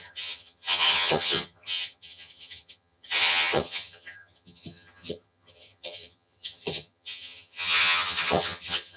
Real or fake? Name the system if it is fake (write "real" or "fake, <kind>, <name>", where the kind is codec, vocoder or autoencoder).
fake, vocoder, HiFi-GAN